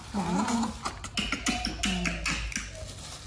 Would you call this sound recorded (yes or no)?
yes